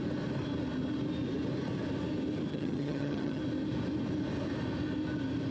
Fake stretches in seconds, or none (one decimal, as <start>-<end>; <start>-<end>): 2.5-3.4